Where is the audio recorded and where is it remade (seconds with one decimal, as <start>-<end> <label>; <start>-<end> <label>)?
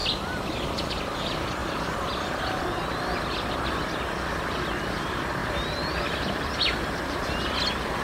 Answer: 0.0-1.0 remade; 1.0-1.6 recorded; 1.6-2.6 remade; 2.6-5.4 recorded; 5.4-7.0 remade; 7.0-8.0 recorded